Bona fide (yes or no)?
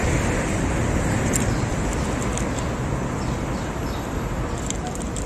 no